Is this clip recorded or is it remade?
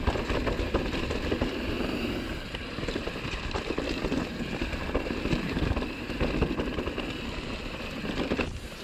remade